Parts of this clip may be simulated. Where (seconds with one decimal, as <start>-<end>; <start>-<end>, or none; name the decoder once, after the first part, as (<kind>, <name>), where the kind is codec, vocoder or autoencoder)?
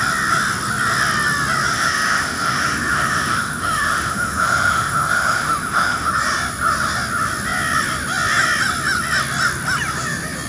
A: 1.7-6.1 (autoencoder, DAC-VAE)